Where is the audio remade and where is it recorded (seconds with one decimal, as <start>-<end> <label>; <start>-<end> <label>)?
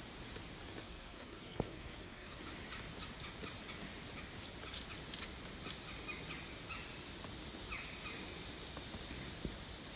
0.0-0.8 recorded; 0.8-2.4 remade; 2.4-10.0 recorded